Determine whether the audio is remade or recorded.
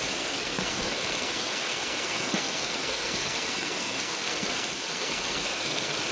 remade